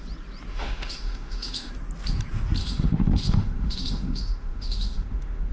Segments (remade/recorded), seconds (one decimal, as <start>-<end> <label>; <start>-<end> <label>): 0.0-0.5 recorded; 0.5-1.7 remade; 1.7-2.6 recorded; 2.6-5.5 remade